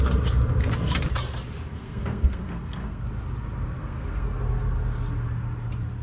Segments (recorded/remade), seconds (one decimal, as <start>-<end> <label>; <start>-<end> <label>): 0.0-1.7 recorded; 1.7-3.0 remade; 3.0-3.8 recorded; 3.8-4.4 remade; 4.4-6.0 recorded